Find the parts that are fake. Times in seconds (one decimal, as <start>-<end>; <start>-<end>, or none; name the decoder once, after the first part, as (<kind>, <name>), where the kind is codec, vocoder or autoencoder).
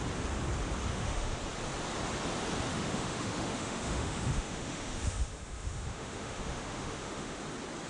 0.9-1.4 (autoencoder, DAC-VAE); 2.7-7.4